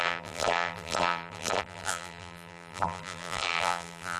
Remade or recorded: remade